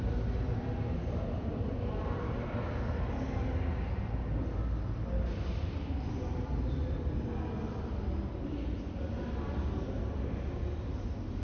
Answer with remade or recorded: recorded